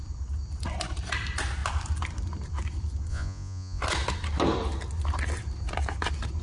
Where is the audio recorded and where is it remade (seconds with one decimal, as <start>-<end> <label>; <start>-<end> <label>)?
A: 0.0-3.1 recorded; 3.1-3.8 remade; 3.8-6.4 recorded

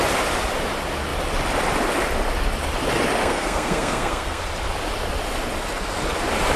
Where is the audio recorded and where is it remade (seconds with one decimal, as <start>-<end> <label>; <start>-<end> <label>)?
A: 0.0-3.2 recorded; 3.2-4.4 remade; 4.4-6.6 recorded

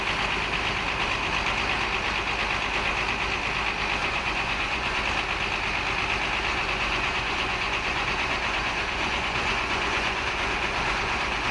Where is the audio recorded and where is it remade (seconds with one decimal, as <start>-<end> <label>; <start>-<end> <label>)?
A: 0.0-4.0 recorded; 4.0-5.0 remade; 5.0-6.5 recorded; 6.5-11.5 remade

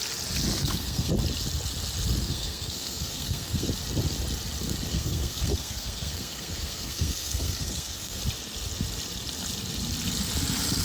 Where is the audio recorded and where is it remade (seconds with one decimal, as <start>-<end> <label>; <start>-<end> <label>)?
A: 0.0-0.5 recorded; 0.5-1.1 remade; 1.1-2.2 recorded; 2.2-3.7 remade; 3.7-4.9 recorded; 4.9-8.2 remade; 8.2-10.8 recorded

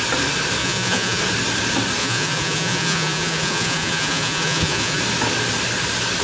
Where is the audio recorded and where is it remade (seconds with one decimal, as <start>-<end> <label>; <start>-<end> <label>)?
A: 0.0-0.6 recorded; 0.6-1.2 remade; 1.2-2.0 recorded; 2.0-5.0 remade; 5.0-6.2 recorded

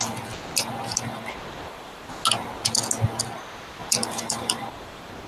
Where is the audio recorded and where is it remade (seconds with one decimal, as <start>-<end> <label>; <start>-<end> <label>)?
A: 0.0-0.9 recorded; 0.9-2.0 remade; 2.0-3.8 recorded; 3.8-5.3 remade

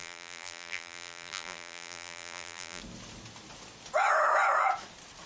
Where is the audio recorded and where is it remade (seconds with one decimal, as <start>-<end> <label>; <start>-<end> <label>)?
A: 0.0-2.8 remade; 2.8-5.3 recorded

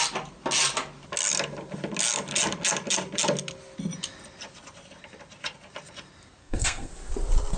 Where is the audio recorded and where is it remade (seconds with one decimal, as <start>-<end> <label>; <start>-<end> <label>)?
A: 0.0-6.4 recorded; 6.4-6.9 remade; 6.9-7.6 recorded